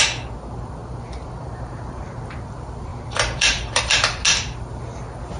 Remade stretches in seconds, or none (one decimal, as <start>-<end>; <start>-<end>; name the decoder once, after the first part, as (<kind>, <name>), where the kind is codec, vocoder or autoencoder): 0.8-2.5 (vocoder, BigVGAN v2); 2.9-3.8